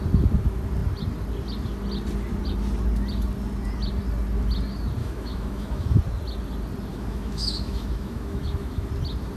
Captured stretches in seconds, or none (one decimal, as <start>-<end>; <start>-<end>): 0.0-5.0; 6.0-6.9; 8.9-9.4